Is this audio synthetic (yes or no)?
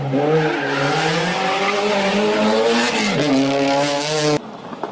no